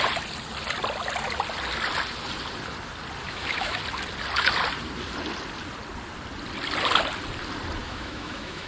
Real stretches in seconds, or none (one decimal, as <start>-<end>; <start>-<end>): 0.0-3.2; 3.8-7.8